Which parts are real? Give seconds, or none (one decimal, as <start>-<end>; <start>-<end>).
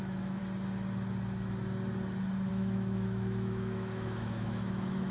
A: 0.4-2.5